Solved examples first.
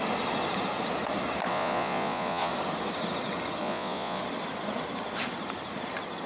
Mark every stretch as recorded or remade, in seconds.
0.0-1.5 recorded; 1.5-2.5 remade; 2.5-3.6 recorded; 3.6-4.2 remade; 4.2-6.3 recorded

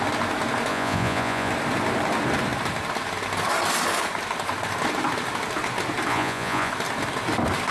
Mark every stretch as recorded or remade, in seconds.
0.0-0.7 recorded; 0.7-1.5 remade; 1.5-6.1 recorded; 6.1-6.7 remade; 6.7-7.7 recorded

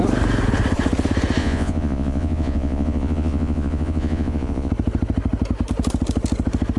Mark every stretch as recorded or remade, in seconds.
0.0-1.4 recorded; 1.4-4.7 remade; 4.7-6.8 recorded

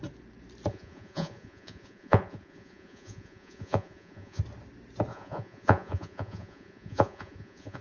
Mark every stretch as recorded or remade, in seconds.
0.0-0.7 recorded; 0.7-4.4 remade; 4.4-5.1 recorded; 5.1-7.8 remade

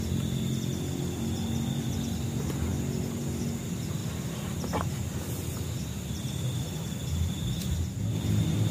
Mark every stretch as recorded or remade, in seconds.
0.0-8.7 recorded

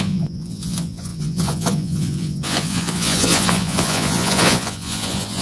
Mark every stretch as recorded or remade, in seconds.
0.0-5.4 remade

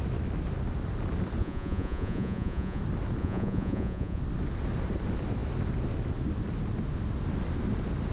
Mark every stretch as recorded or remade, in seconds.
0.0-1.4 recorded; 1.4-2.8 remade; 2.8-3.2 recorded; 3.2-4.2 remade; 4.2-8.1 recorded

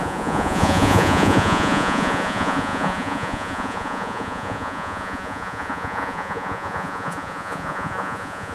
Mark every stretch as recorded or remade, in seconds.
0.0-8.5 remade